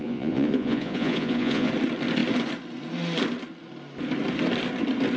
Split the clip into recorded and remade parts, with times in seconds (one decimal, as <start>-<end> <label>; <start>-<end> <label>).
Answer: 0.0-1.7 remade; 1.7-5.2 recorded